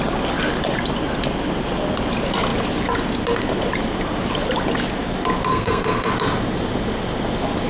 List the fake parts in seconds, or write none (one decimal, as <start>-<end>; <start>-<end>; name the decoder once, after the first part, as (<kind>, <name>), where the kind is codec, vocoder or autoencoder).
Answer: 5.5-6.1 (codec, SNAC)